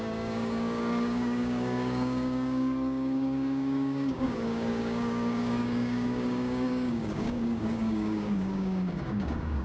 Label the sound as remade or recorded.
remade